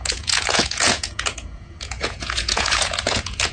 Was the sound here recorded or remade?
remade